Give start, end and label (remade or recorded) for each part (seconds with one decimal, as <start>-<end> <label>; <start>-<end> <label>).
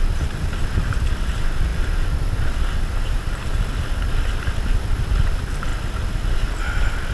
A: 0.0-7.1 recorded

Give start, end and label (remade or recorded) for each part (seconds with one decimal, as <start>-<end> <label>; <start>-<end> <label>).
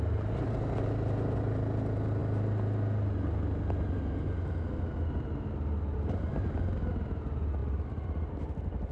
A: 0.0-8.9 recorded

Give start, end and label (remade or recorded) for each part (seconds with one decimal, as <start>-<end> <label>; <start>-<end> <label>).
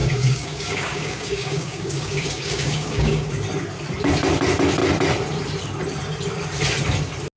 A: 0.0-3.3 remade; 3.3-7.4 recorded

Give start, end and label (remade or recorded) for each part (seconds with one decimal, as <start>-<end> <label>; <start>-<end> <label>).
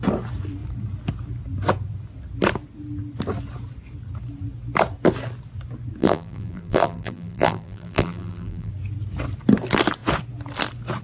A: 0.0-6.0 recorded; 6.0-8.7 remade; 8.7-11.0 recorded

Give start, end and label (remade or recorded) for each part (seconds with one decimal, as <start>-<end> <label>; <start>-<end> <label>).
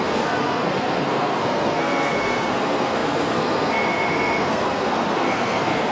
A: 0.0-5.9 remade